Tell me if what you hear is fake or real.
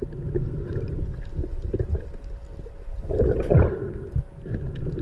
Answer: real